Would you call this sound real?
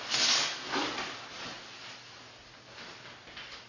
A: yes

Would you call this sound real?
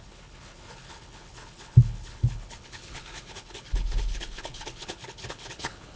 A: no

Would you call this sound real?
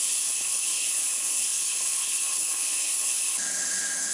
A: no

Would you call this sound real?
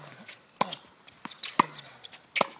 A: yes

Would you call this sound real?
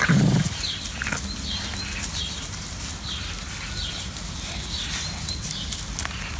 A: yes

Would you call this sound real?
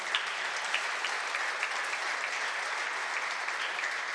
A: yes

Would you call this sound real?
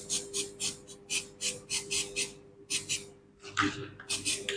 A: yes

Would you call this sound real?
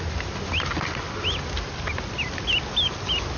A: yes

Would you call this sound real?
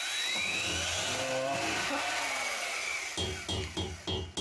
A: yes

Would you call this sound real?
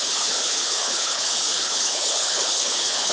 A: no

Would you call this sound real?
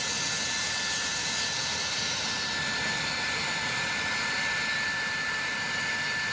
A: yes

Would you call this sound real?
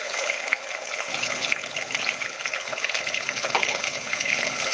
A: no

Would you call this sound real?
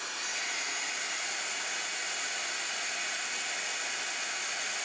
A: yes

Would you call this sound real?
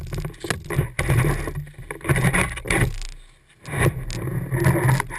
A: yes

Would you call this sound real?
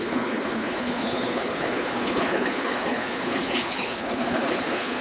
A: no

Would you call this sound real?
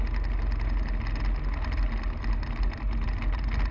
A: yes